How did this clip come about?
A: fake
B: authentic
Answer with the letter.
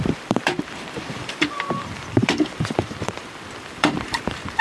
A